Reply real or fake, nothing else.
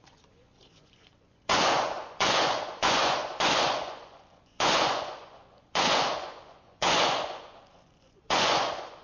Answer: fake